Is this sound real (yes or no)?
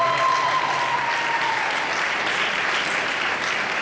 yes